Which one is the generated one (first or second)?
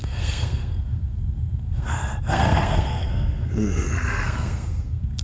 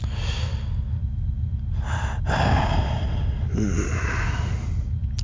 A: first